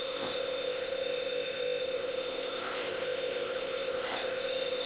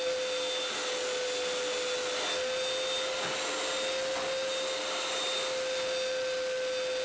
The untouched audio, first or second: second